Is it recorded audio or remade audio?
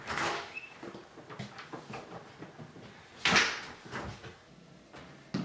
recorded